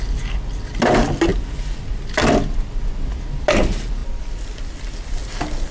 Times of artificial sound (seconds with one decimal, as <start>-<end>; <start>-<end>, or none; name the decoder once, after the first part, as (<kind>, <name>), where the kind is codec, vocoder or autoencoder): none